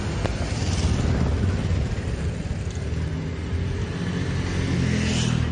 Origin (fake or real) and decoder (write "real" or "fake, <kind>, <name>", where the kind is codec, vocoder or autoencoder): real